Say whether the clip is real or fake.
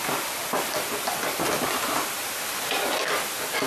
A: real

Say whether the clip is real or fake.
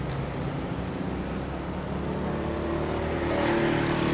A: real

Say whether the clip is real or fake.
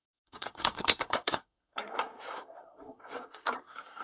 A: fake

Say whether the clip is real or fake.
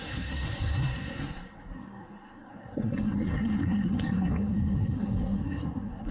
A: fake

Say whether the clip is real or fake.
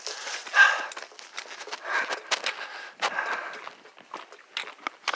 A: real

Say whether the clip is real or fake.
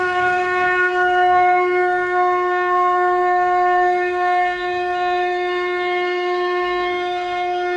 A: fake